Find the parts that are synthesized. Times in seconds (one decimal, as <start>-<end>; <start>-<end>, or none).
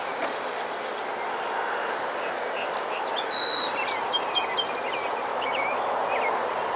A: 5.3-6.0